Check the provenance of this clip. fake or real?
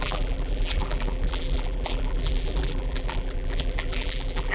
fake